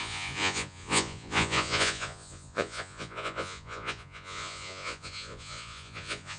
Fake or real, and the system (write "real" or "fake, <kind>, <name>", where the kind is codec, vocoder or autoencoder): fake, vocoder, Vocos